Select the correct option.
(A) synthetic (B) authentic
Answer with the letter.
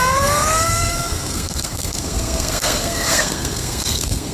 A